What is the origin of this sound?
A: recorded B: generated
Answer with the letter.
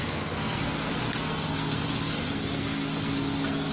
B